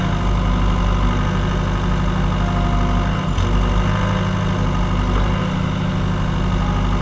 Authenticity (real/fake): real